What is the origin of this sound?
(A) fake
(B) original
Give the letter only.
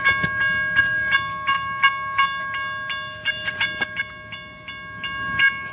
B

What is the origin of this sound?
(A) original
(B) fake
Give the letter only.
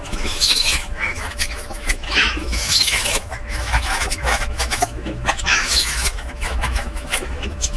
B